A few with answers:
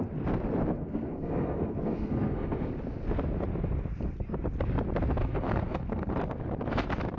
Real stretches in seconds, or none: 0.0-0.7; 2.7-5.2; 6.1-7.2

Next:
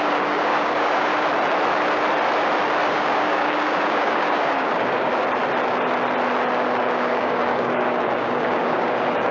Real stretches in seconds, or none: 1.1-2.9; 5.1-6.8

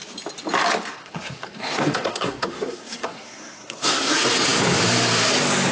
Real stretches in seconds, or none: 0.0-1.0; 4.1-5.7

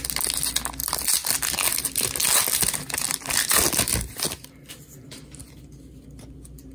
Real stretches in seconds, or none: 0.0-6.7

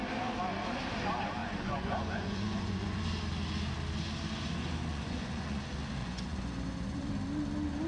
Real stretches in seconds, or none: 0.0-1.4; 3.0-4.9; 5.6-6.0; 7.1-7.9